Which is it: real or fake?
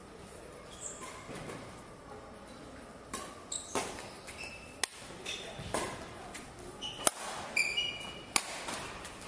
real